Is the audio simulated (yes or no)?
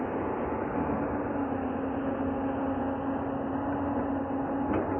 no